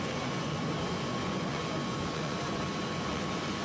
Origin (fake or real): fake